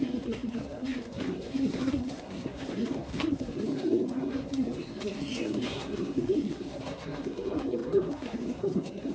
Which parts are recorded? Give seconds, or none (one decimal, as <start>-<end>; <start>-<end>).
none